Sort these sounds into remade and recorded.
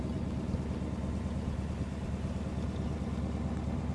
recorded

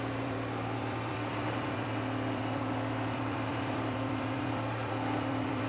remade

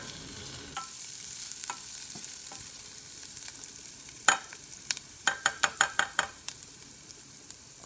remade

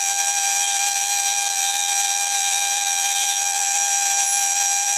remade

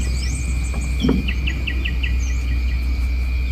recorded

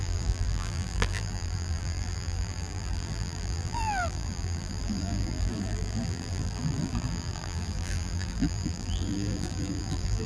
remade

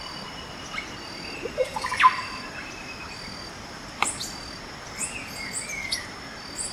recorded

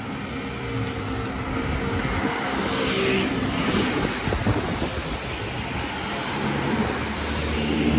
recorded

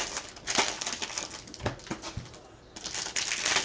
recorded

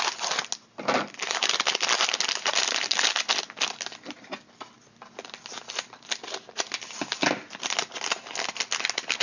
recorded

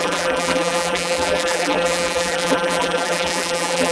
remade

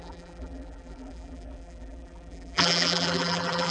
remade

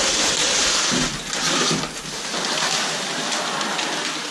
recorded